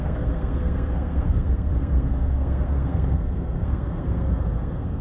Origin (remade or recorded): remade